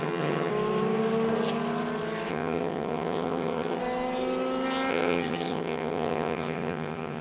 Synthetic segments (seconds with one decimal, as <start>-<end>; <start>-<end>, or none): 0.0-0.5; 2.3-3.8; 4.9-7.2

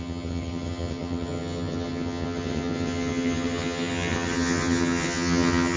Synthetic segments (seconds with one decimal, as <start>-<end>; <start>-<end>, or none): 0.0-5.8

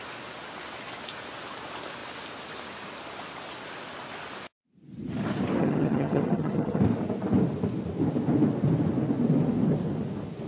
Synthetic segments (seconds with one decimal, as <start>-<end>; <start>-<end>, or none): 5.6-6.8

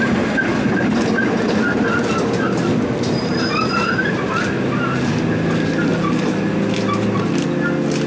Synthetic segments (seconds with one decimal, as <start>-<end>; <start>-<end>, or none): none